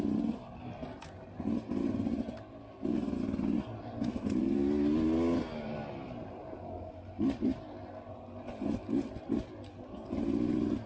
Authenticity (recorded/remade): recorded